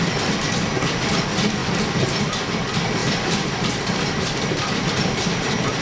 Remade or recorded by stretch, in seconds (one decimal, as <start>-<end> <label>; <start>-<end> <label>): 0.0-3.0 recorded; 3.0-5.8 remade